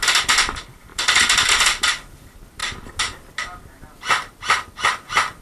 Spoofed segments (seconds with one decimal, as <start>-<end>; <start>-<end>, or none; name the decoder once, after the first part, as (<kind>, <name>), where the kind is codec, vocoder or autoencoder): none